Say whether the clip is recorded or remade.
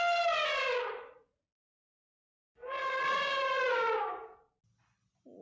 recorded